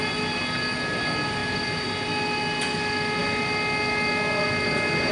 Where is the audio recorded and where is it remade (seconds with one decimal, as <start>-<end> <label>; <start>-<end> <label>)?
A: 0.0-5.1 recorded